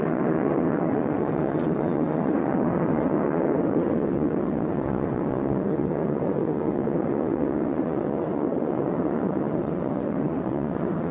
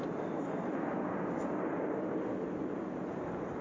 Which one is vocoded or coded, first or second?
first